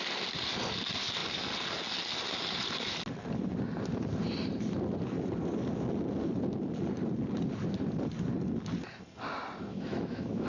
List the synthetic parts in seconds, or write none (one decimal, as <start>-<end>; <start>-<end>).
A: 9.7-10.5